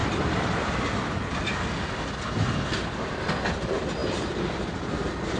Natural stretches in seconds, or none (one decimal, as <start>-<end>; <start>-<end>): 2.0-4.0; 4.6-5.4